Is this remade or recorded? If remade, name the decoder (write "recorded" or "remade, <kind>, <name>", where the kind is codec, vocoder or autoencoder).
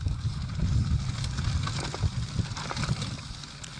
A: recorded